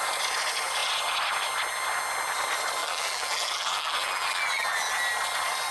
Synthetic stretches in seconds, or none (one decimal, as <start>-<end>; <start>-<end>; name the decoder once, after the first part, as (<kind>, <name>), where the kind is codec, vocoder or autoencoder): 2.8-4.9 (vocoder, BigVGAN v2)